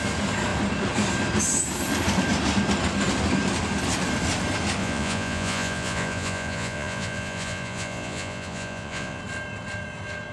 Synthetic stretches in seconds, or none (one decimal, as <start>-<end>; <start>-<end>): 4.8-9.2